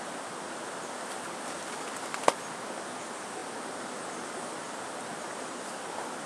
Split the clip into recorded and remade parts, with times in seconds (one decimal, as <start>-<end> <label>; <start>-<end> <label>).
0.0-6.3 recorded